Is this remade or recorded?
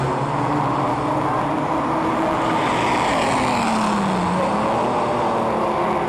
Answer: recorded